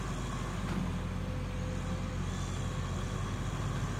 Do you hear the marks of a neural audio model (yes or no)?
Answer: no